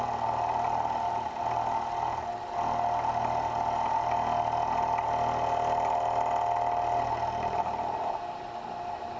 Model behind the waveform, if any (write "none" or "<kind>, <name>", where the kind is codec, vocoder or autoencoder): none